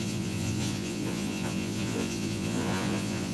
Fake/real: fake